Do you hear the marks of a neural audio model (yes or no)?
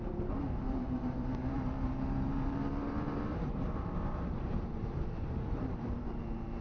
yes